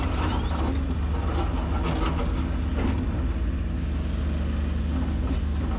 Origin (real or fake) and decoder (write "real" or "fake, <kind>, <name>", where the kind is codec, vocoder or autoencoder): real